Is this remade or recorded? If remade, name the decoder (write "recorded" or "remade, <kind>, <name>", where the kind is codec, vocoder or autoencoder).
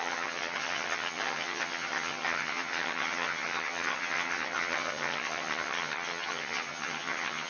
remade, vocoder, HiFi-GAN